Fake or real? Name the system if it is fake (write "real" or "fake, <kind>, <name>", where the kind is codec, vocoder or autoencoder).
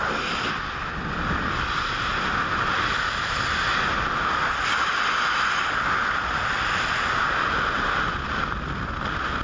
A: real